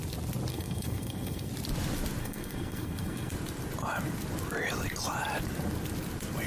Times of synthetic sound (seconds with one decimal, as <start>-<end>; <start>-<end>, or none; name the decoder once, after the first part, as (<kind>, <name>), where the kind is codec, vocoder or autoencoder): 0.5-1.5 (codec, SNAC); 2.2-3.3